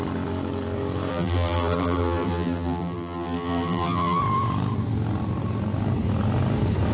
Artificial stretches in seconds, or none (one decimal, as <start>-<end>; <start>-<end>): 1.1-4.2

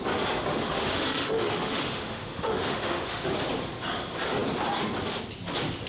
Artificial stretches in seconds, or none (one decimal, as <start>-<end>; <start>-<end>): 0.5-3.3

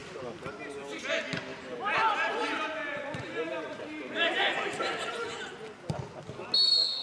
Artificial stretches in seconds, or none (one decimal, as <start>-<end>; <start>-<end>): 1.5-5.4